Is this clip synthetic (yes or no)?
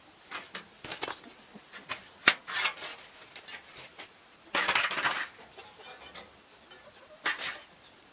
no